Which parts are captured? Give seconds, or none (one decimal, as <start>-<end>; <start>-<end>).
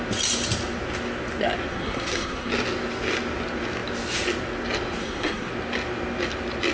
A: 0.0-1.7; 2.5-5.0; 5.5-6.7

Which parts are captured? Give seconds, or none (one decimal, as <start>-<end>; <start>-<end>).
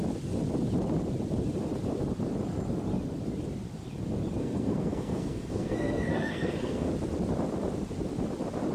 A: 0.0-4.4; 6.9-8.7